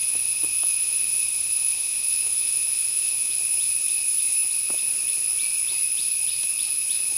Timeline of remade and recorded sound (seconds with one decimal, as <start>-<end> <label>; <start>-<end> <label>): 0.0-3.3 remade; 3.3-7.2 recorded